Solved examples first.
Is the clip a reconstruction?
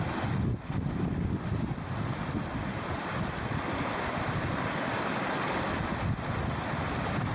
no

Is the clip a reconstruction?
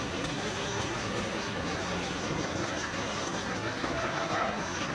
yes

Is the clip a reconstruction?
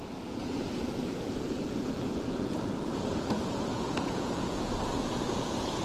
yes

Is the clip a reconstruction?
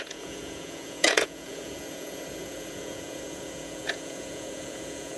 yes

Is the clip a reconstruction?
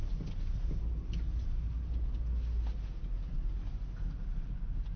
no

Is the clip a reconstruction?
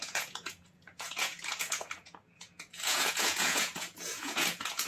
yes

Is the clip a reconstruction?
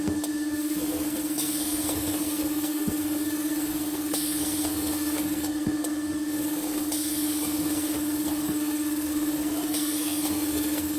yes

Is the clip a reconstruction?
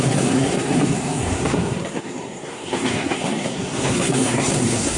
yes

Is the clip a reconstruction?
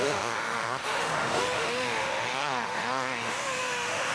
yes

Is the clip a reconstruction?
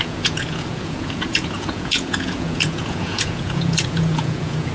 yes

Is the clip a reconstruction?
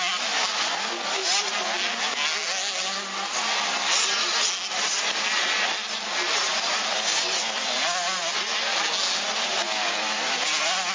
no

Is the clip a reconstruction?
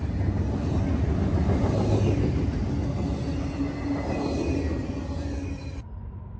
no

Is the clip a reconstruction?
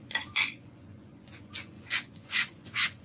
yes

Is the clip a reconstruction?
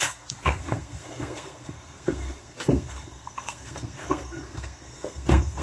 yes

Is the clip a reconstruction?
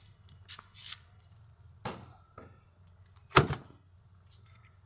no